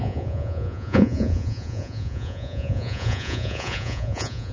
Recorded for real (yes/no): no